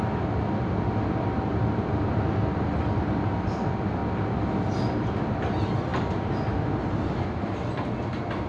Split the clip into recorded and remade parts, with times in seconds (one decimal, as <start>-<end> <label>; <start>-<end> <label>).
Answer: 0.0-8.5 recorded